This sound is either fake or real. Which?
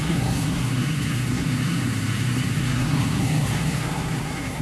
fake